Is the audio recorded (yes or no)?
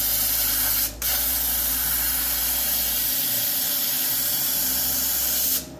yes